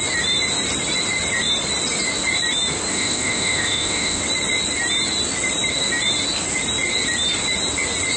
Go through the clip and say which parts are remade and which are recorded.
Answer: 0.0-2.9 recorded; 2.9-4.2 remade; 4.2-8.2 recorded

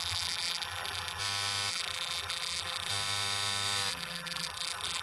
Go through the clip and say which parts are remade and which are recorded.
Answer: 0.0-1.2 remade; 1.2-1.7 recorded; 1.7-2.9 remade; 2.9-3.9 recorded; 3.9-5.0 remade

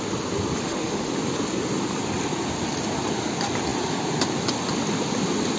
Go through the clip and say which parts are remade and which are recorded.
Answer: 0.0-0.6 recorded; 0.6-1.1 remade; 1.1-5.6 recorded

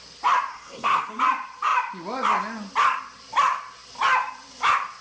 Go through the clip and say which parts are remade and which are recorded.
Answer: 0.0-0.5 recorded; 0.5-1.1 remade; 1.1-5.0 recorded

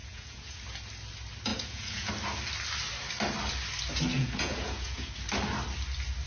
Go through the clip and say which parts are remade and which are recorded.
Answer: 0.0-0.6 remade; 0.6-1.5 recorded; 1.5-2.1 remade; 2.1-4.1 recorded; 4.1-5.1 remade; 5.1-6.3 recorded

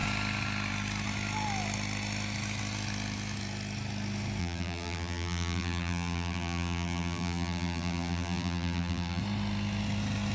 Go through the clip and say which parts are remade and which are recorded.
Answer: 0.0-4.4 recorded; 4.4-9.2 remade; 9.2-10.3 recorded

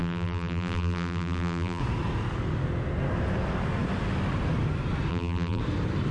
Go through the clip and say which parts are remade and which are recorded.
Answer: 0.0-1.8 remade; 1.8-5.1 recorded; 5.1-5.6 remade; 5.6-6.1 recorded

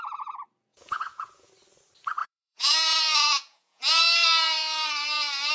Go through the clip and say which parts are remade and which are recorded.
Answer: 0.0-0.7 recorded; 0.7-1.5 remade; 1.5-2.2 recorded; 2.2-5.5 remade